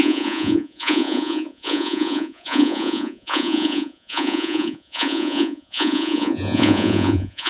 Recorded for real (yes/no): no